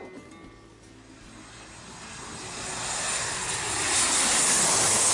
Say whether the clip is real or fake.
real